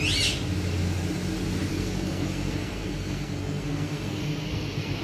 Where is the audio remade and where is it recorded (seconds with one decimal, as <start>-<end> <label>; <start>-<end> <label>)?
0.0-1.7 recorded; 1.7-5.0 remade